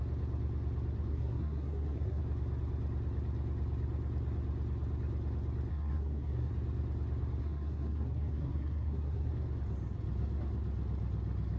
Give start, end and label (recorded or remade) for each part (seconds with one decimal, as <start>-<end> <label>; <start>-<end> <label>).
0.0-1.1 recorded; 1.1-2.2 remade; 2.2-5.7 recorded; 5.7-6.5 remade; 6.5-7.4 recorded; 7.4-9.3 remade; 9.3-11.6 recorded